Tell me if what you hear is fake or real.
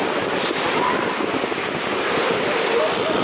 real